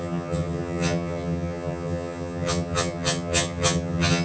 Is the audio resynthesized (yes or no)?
yes